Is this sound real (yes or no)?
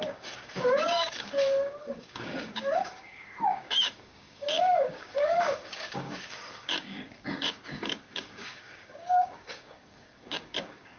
no